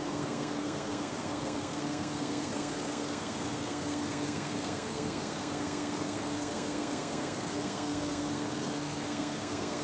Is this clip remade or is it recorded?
remade